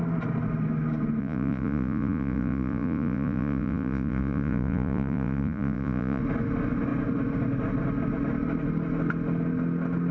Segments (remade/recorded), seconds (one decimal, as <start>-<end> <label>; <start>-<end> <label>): 0.0-1.2 recorded; 1.2-6.2 remade; 6.2-10.1 recorded